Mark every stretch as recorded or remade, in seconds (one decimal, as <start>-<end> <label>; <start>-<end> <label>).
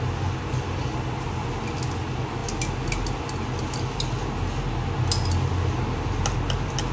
0.0-6.9 recorded